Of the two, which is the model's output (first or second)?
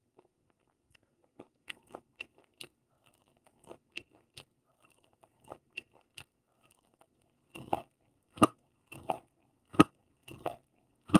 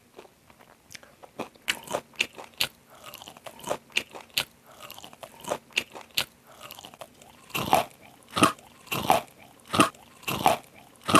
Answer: first